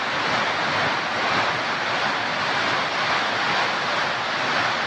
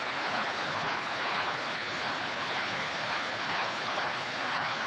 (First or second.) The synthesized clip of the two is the second